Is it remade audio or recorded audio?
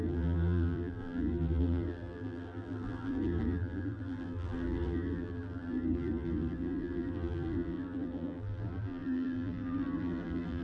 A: remade